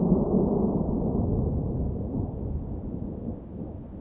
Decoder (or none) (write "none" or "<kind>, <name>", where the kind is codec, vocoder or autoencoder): vocoder, BigVGAN v2